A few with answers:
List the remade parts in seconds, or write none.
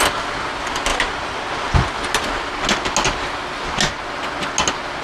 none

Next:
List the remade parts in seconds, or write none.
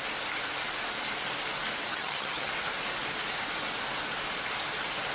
1.9-2.5 (vocoder, HiFi-GAN)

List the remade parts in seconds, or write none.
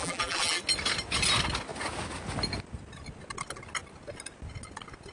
0.0-0.6 (vocoder, BigVGAN v2)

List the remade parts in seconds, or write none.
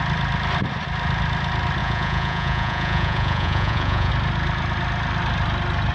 1.8-4.1 (vocoder, Vocos)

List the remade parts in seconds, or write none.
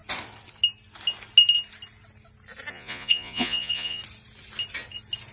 2.7-4.0 (vocoder, Vocos)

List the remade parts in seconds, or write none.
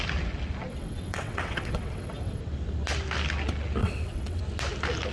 0.7-2.4 (vocoder, WaveNeXt); 3.8-4.4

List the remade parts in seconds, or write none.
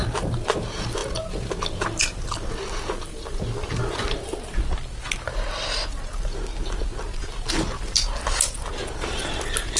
none